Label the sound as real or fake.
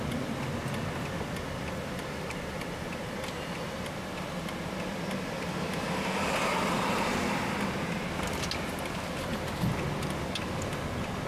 real